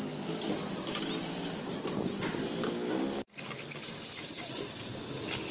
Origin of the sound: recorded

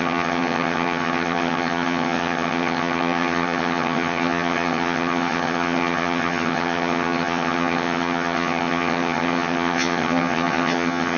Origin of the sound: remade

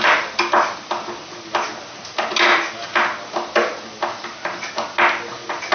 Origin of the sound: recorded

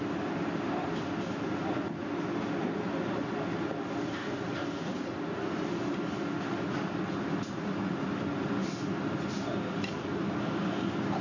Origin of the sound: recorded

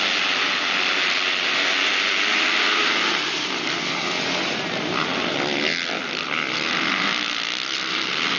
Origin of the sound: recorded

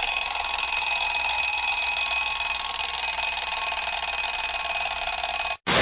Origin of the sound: recorded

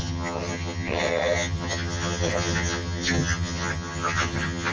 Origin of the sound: remade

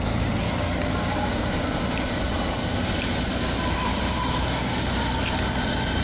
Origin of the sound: recorded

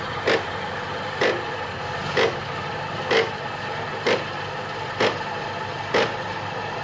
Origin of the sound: recorded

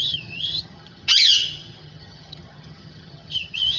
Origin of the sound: remade